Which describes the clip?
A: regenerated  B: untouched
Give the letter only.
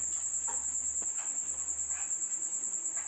B